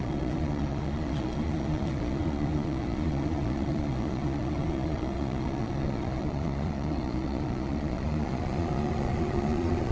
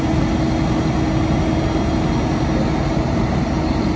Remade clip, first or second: first